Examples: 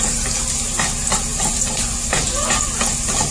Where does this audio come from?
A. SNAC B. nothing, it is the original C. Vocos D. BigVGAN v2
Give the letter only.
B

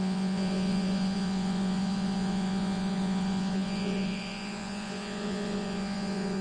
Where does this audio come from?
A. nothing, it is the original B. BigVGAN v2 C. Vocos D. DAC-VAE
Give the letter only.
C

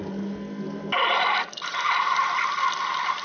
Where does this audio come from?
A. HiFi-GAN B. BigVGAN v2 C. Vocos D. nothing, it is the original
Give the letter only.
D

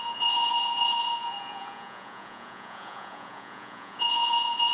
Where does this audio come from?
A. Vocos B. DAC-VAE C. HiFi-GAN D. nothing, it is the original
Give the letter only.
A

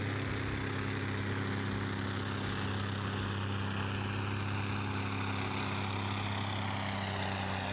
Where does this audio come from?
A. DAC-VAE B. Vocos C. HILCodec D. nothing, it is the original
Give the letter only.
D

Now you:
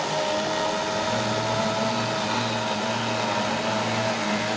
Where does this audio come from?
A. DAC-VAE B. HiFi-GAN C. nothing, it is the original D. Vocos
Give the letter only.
C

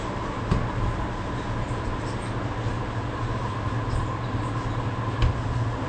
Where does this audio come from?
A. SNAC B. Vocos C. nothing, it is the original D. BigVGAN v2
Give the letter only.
C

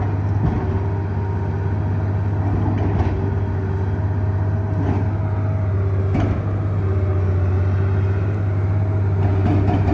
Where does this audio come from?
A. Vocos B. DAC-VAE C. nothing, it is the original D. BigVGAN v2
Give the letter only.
C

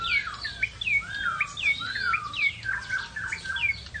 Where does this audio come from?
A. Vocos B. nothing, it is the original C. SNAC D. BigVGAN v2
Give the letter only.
B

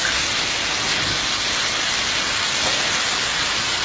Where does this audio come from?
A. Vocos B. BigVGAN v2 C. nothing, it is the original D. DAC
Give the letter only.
C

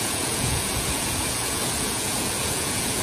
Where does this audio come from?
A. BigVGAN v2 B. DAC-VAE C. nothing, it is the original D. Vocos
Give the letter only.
D